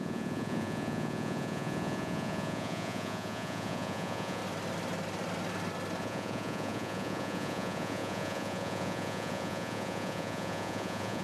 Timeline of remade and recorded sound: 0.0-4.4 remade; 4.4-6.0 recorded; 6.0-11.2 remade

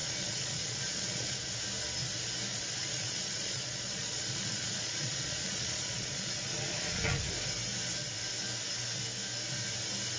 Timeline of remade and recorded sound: 0.0-1.4 remade; 1.4-2.5 recorded; 2.5-7.3 remade; 7.3-10.2 recorded

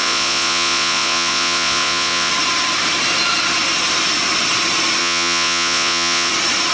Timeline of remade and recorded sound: 0.0-2.3 remade; 2.3-5.0 recorded; 5.0-6.3 remade; 6.3-6.7 recorded

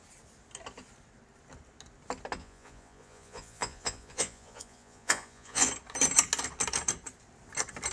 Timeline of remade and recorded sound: 0.0-2.4 recorded; 2.4-5.7 remade; 5.7-7.9 recorded

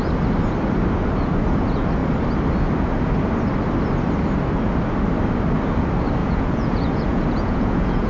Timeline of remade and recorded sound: 0.0-6.2 recorded; 6.2-8.1 remade

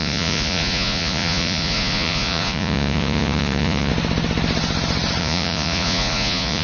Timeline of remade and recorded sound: 0.0-3.9 remade; 3.9-5.2 recorded; 5.2-6.6 remade

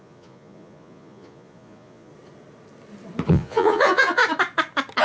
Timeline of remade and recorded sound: 0.0-2.1 remade; 2.1-3.3 recorded; 3.3-4.2 remade; 4.2-5.0 recorded

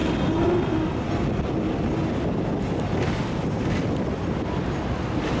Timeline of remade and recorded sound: 0.0-5.4 recorded